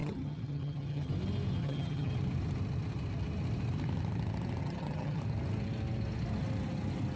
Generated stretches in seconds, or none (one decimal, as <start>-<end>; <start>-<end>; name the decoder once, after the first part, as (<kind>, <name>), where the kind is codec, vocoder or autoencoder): 0.0-1.1 (vocoder, HiFi-GAN); 1.6-2.1; 4.6-5.2